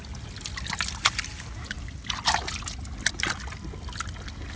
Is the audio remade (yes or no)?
no